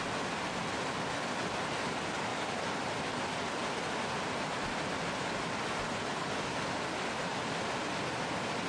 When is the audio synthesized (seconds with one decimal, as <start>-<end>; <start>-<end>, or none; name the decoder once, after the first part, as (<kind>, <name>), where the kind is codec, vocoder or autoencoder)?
none